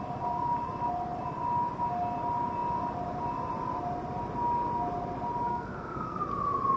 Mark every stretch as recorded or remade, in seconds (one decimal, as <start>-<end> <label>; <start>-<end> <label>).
0.0-5.5 recorded; 5.5-6.3 remade; 6.3-6.8 recorded